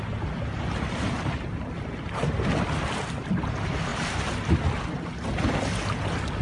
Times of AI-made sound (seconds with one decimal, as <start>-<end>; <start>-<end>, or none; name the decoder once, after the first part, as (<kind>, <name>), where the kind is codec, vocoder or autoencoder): none